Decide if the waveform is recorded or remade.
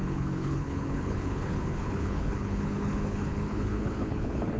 remade